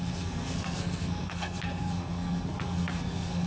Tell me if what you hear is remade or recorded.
remade